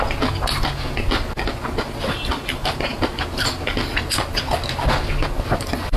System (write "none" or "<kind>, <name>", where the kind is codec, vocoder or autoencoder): none